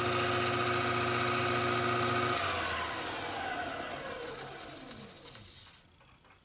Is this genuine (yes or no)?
yes